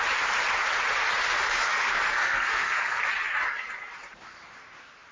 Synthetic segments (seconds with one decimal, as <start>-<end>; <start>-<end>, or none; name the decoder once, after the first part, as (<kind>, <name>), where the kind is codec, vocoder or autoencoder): 1.7-3.0 (codec, SNAC)